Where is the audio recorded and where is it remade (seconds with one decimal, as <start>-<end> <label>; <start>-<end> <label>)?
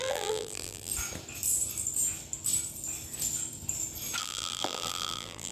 0.0-0.9 remade; 0.9-4.2 recorded; 4.2-5.5 remade